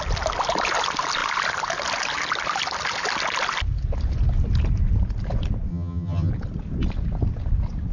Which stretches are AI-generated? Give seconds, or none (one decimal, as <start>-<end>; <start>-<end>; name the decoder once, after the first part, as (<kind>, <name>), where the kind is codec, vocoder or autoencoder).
5.7-6.3 (vocoder, HiFi-GAN)